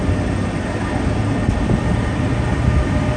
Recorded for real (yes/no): yes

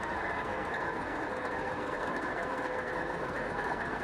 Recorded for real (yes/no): no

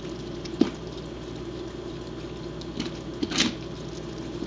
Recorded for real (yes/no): yes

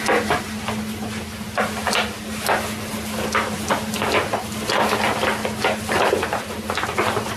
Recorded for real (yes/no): yes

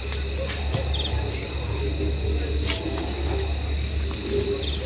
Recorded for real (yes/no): yes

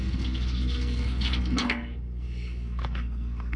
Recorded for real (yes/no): no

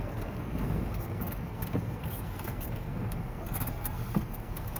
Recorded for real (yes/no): no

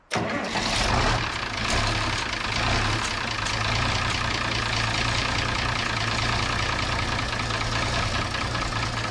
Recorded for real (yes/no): yes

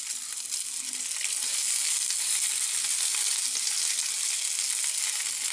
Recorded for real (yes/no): yes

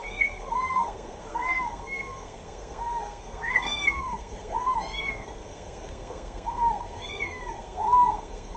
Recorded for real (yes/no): no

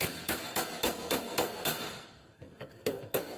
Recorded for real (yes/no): no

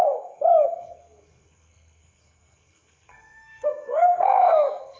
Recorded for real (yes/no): no